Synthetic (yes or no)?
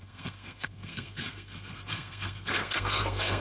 yes